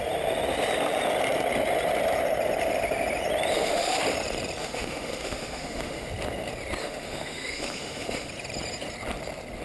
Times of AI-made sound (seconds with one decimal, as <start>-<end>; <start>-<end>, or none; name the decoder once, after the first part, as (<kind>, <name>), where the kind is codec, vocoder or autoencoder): 3.5-4.0 (autoencoder, DAC-VAE); 4.6-6.1; 6.8-8.3